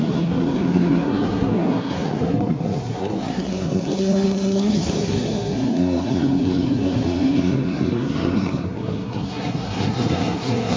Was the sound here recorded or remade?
remade